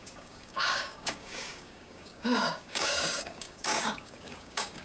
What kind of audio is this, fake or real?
fake